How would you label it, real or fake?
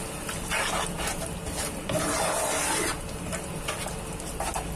real